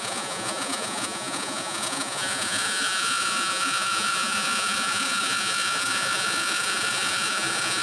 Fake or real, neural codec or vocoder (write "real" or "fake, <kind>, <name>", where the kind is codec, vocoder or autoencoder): fake, vocoder, Vocos